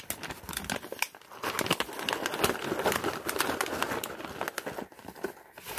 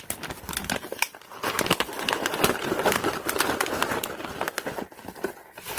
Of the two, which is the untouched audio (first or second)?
first